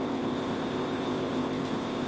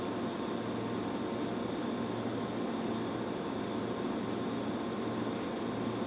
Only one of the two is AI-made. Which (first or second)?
first